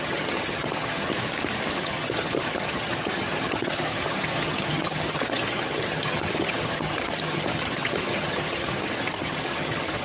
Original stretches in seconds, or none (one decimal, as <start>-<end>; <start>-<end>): 1.1-1.7

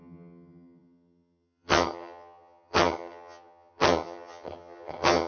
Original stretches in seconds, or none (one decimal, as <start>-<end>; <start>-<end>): none

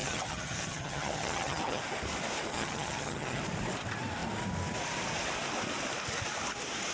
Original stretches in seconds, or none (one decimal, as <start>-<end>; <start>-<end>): 1.8-2.5; 3.4-6.9

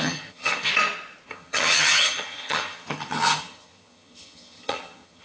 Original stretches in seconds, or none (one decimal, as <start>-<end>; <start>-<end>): 0.7-1.3